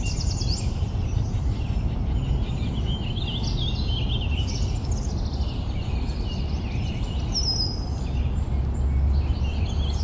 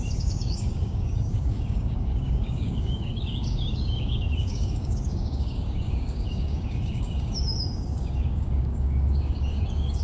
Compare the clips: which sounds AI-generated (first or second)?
second